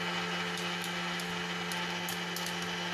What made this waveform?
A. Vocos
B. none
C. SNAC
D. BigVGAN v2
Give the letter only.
B